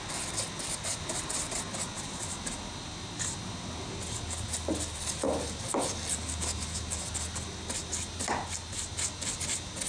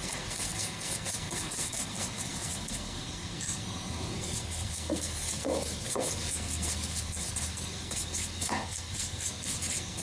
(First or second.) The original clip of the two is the first